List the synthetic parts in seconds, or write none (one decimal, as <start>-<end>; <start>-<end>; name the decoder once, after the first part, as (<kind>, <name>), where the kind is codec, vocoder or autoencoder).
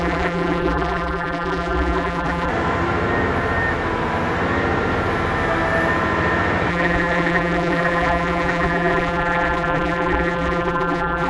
0.0-2.5 (vocoder, BigVGAN v2); 6.7-11.3